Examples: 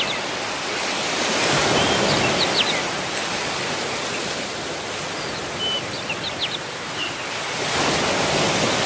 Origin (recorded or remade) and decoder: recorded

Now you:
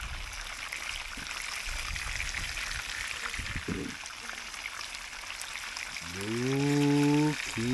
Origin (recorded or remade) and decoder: recorded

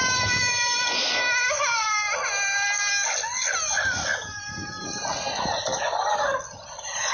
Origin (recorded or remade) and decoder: recorded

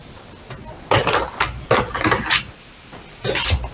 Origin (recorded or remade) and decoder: recorded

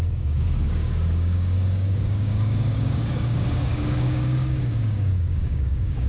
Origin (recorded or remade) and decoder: remade, codec, DAC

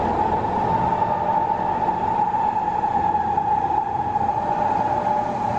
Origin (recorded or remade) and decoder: recorded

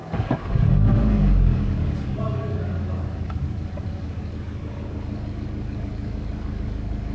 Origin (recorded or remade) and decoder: remade, codec, DAC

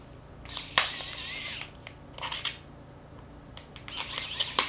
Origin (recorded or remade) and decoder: recorded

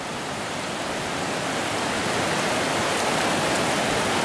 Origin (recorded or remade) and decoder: recorded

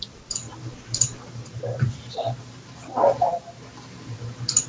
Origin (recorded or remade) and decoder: recorded